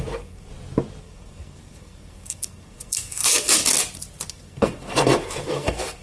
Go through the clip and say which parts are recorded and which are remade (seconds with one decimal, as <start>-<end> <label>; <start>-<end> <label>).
0.0-0.5 remade; 0.5-1.0 recorded; 1.0-3.6 remade; 3.6-4.3 recorded; 4.3-6.0 remade